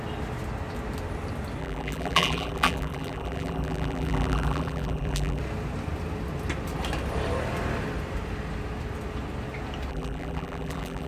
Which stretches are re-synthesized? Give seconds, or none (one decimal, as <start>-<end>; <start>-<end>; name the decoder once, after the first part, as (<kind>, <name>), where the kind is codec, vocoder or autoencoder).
1.6-5.4 (vocoder, BigVGAN v2); 9.9-11.1